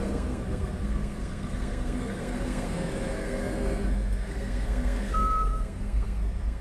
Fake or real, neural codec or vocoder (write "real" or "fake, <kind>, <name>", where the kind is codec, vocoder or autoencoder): fake, codec, SNAC